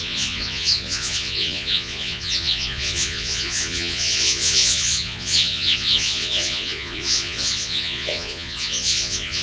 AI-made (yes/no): yes